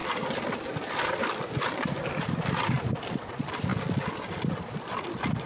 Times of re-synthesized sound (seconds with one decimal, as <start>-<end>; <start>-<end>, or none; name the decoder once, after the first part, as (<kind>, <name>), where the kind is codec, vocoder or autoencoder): none